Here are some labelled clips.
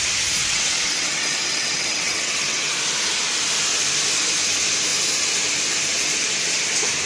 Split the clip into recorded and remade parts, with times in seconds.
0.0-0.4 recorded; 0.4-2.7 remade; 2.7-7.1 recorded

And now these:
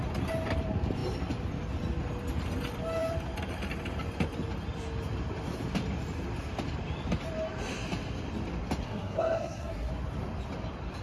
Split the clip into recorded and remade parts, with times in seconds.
0.0-8.8 recorded; 8.8-9.9 remade; 9.9-11.0 recorded

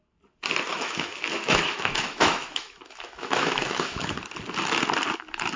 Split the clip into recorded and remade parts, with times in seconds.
0.0-0.7 recorded; 0.7-4.1 remade; 4.1-5.6 recorded

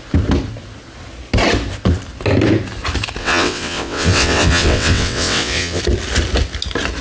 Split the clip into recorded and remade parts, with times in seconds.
0.0-3.2 recorded; 3.2-5.8 remade; 5.8-7.0 recorded

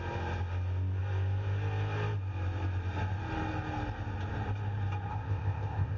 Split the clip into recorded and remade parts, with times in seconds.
0.0-5.1 recorded; 5.1-6.0 remade

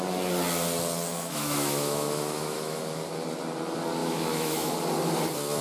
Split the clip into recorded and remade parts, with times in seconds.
0.0-1.1 recorded; 1.1-2.8 remade; 2.8-4.0 recorded; 4.0-4.7 remade; 4.7-5.6 recorded